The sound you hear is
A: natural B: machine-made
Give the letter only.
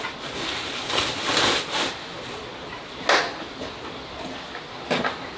A